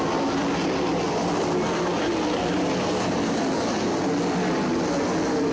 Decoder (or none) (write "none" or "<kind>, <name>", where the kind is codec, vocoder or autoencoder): none